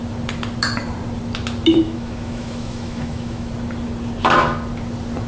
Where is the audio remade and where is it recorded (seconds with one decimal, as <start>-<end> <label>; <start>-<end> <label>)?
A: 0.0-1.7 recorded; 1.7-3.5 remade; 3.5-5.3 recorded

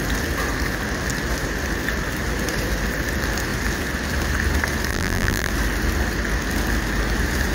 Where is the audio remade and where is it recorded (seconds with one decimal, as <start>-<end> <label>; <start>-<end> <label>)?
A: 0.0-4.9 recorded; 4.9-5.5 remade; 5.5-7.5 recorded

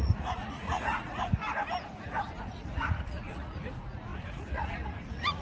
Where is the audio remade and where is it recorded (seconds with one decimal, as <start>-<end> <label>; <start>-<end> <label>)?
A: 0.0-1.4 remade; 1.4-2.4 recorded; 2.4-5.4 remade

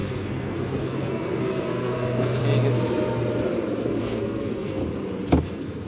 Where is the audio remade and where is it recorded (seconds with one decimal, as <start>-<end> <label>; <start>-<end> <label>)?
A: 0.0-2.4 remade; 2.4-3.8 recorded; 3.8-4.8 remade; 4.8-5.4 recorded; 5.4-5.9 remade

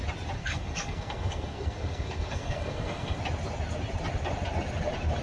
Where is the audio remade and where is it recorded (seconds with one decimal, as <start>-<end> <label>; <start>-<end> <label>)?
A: 0.0-0.4 recorded; 0.4-3.2 remade; 3.2-5.2 recorded